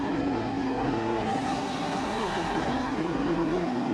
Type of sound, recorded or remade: remade